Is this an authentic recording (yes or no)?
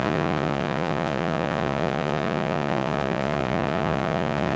no